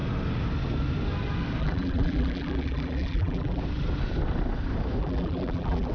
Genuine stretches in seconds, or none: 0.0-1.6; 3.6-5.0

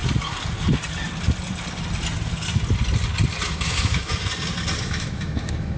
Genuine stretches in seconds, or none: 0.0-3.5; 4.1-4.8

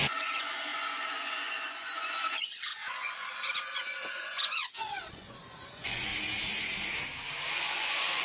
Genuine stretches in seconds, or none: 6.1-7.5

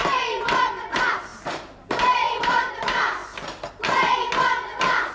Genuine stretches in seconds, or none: 0.0-0.9; 3.2-5.1